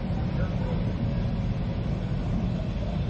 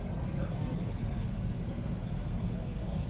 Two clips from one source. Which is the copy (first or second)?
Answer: second